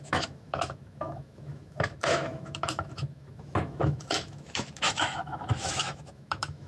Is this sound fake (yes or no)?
yes